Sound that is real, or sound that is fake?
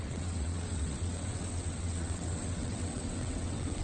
fake